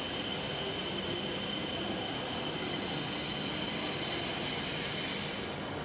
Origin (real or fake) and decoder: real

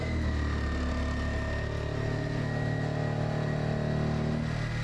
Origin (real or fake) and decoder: real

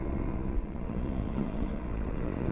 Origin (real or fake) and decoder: fake, vocoder, Vocos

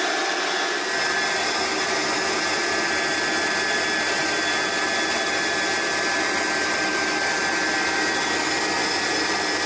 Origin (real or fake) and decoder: real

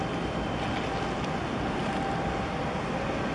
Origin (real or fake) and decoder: real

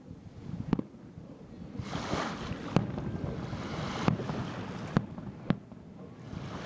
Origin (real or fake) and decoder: real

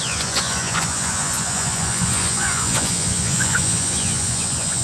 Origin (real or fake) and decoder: fake, vocoder, Vocos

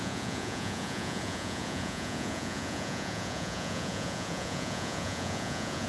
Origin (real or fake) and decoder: fake, vocoder, Vocos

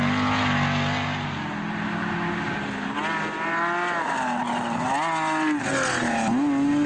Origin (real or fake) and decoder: real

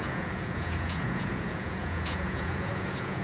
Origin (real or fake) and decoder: fake, vocoder, Vocos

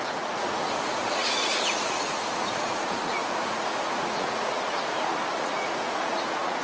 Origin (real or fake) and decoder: fake, vocoder, Vocos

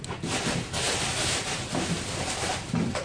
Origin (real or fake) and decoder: real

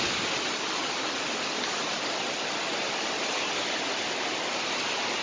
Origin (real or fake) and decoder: real